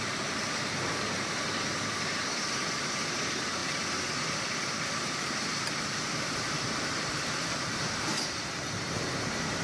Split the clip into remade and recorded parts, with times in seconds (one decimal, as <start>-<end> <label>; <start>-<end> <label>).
0.0-3.6 remade; 3.6-5.9 recorded; 5.9-9.6 remade